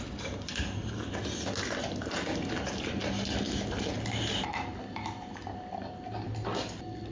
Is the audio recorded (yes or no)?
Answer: yes